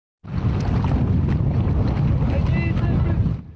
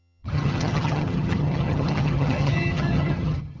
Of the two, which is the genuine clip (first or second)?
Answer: first